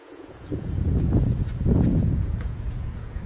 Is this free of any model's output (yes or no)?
no